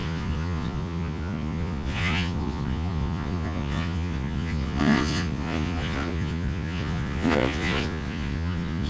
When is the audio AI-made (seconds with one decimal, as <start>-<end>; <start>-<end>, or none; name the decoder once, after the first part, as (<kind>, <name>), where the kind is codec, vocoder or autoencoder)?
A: 0.0-8.9 (vocoder, Vocos)

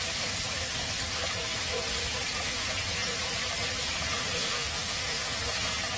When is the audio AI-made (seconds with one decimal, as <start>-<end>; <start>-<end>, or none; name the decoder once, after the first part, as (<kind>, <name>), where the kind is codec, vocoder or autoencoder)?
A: 4.3-5.4 (autoencoder, DAC-VAE)

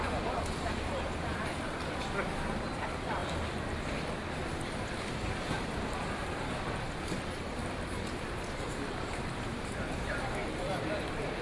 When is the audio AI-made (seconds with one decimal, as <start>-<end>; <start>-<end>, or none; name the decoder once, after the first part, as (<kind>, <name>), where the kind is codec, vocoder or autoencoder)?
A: 0.0-11.4 (vocoder, BigVGAN v2)

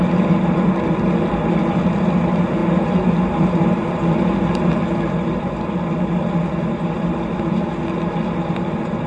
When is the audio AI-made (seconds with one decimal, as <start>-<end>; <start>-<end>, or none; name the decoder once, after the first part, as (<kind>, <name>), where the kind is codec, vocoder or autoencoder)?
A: none